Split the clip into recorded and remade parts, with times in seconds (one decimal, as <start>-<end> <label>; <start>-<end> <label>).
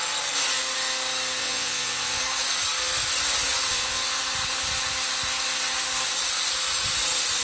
0.0-1.4 recorded; 1.4-2.2 remade; 2.2-3.7 recorded; 3.7-4.2 remade; 4.2-7.4 recorded